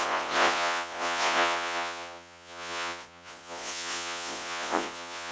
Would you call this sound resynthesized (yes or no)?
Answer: yes